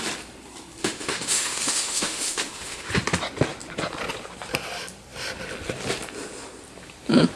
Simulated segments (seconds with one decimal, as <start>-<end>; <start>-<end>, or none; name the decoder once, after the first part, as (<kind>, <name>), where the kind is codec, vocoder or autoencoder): 0.8-2.9 (autoencoder, DAC-VAE)